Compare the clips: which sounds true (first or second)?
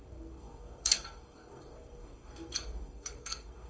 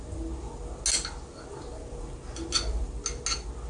second